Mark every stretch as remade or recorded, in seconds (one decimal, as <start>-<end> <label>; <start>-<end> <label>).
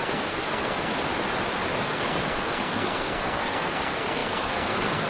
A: 0.0-0.9 remade; 0.9-1.8 recorded; 1.8-5.1 remade